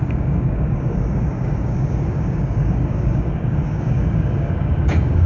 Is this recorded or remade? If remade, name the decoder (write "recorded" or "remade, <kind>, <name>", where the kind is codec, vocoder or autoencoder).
remade, codec, DAC